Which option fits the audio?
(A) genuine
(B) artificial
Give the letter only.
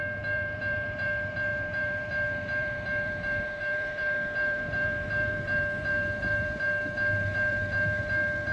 B